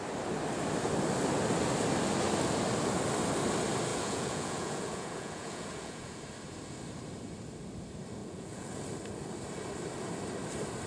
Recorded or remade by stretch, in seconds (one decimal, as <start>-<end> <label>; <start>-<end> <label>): 0.0-3.9 recorded; 3.9-6.2 remade; 6.2-8.2 recorded; 8.2-8.7 remade; 8.7-10.9 recorded